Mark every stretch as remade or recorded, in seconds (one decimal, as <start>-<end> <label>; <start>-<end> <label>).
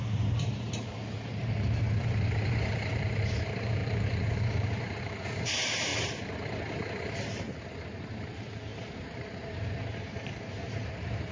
0.0-5.9 remade; 5.9-8.1 recorded; 8.1-11.3 remade